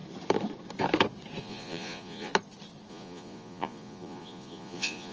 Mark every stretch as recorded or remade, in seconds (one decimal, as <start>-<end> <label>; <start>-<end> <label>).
0.0-1.4 recorded; 1.4-2.3 remade; 2.3-2.9 recorded; 2.9-5.1 remade